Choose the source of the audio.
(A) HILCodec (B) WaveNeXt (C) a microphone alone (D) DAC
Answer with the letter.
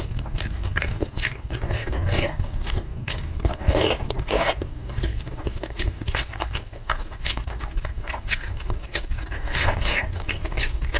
D